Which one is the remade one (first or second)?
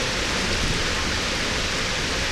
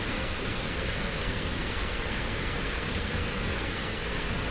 second